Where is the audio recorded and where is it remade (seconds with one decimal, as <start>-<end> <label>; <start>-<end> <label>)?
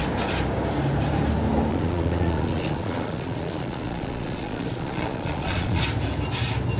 0.0-1.7 recorded; 1.7-5.8 remade; 5.8-6.8 recorded